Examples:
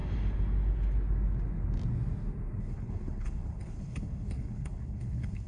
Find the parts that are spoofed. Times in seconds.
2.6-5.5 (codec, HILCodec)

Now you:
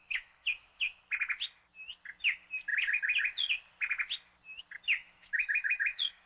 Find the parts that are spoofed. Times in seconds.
0.0-1.0 (autoencoder, DAC-VAE); 5.0-6.3

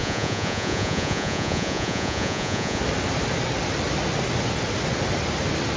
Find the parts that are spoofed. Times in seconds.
0.0-2.8 (vocoder, Vocos)

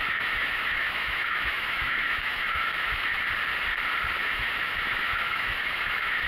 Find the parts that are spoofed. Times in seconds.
0.0-3.1 (autoencoder, DAC-VAE); 4.2-6.3

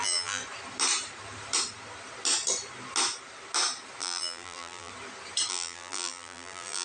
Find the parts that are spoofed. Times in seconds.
0.0-0.4 (vocoder, BigVGAN v2); 4.0-4.9; 5.5-6.8

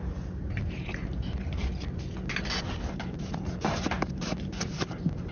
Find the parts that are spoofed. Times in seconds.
0.0-1.7 (vocoder, BigVGAN v2); 2.9-5.3

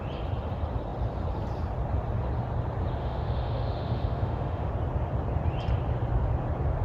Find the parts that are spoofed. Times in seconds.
3.0-4.7 (autoencoder, DAC-VAE)